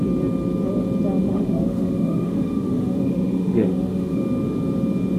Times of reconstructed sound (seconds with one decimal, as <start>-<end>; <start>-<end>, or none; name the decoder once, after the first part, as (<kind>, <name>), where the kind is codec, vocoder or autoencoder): 1.3-4.2 (autoencoder, DAC-VAE)

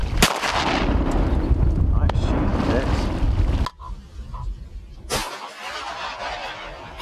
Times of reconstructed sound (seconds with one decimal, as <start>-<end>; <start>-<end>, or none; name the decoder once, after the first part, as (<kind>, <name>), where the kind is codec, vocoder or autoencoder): none

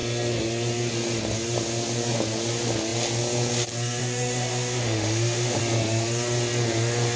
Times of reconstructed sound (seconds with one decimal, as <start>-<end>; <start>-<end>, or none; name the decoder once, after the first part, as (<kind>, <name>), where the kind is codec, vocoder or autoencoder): 4.0-5.6 (autoencoder, DAC-VAE)

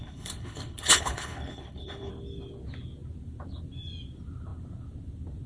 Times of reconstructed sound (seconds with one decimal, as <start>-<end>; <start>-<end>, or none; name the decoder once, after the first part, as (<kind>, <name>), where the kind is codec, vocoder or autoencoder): 0.0-2.1 (codec, HILCodec)

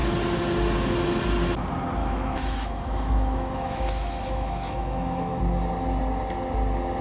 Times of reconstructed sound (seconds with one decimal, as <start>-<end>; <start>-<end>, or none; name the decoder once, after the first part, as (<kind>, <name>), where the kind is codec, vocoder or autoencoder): 2.0-5.4 (autoencoder, DAC-VAE)

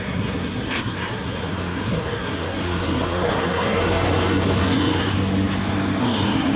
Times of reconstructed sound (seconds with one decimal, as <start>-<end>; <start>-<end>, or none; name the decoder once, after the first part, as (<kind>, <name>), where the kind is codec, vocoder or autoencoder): 0.0-5.1 (codec, SNAC); 6.0-6.6